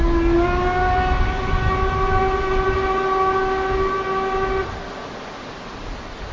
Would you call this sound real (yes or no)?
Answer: yes